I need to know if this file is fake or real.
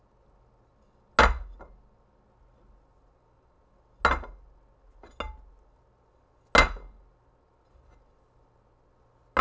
real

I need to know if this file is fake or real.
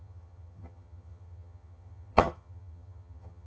fake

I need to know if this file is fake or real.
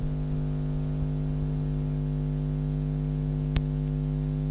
real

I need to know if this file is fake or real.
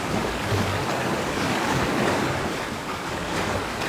fake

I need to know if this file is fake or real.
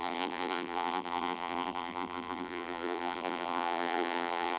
fake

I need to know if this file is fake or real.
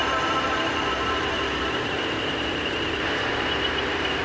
fake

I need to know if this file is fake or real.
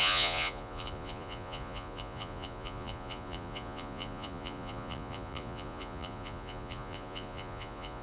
fake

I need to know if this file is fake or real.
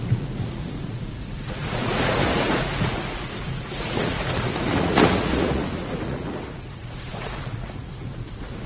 fake